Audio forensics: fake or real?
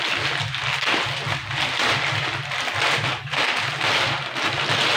real